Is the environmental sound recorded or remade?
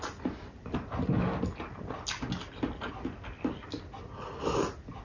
recorded